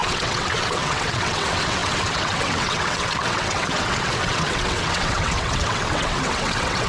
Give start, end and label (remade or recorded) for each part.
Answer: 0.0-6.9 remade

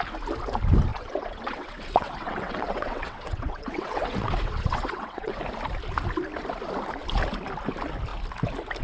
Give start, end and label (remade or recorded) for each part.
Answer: 0.0-0.9 recorded; 0.9-5.4 remade; 5.4-8.8 recorded

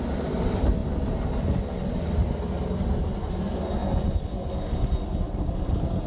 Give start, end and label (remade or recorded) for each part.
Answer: 0.0-6.1 recorded

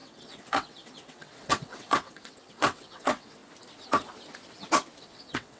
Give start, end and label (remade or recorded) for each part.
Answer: 0.0-3.4 remade; 3.4-5.0 recorded; 5.0-5.6 remade

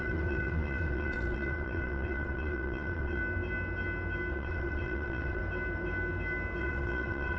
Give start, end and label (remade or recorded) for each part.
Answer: 0.0-3.2 remade; 3.2-4.3 recorded; 4.3-5.4 remade; 5.4-6.6 recorded; 6.6-7.4 remade